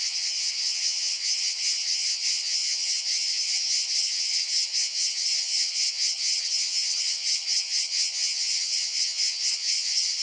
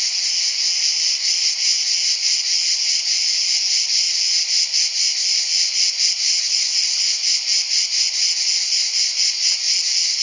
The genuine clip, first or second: second